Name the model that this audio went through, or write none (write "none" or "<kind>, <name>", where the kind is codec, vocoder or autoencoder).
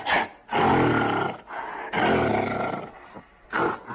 none